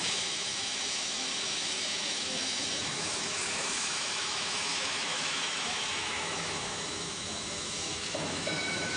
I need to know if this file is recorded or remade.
remade